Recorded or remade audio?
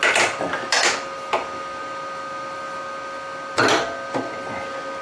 recorded